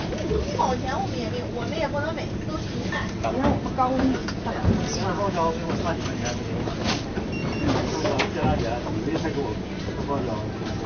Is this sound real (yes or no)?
yes